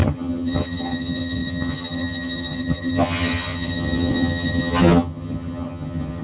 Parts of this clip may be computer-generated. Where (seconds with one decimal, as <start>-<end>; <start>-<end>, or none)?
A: 0.0-6.2